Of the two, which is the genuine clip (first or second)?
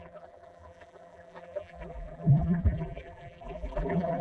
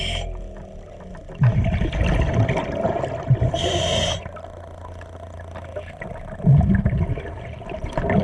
second